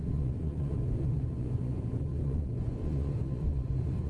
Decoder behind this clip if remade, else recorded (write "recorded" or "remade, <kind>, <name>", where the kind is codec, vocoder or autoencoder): remade, vocoder, Vocos